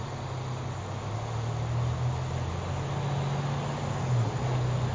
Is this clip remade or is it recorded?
recorded